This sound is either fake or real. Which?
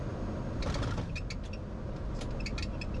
real